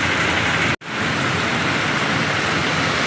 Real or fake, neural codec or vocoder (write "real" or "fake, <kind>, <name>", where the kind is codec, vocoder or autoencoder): real